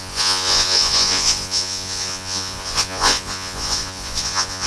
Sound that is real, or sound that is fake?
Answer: fake